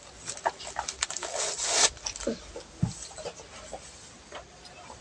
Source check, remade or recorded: recorded